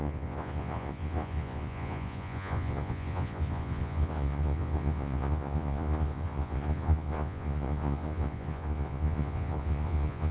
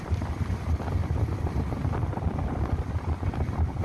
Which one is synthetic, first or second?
first